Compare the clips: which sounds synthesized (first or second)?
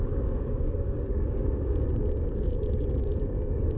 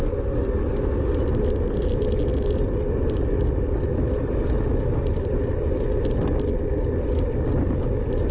first